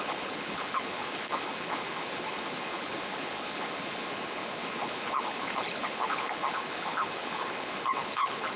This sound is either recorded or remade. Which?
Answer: remade